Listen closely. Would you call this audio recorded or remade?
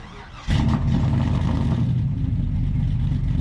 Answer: recorded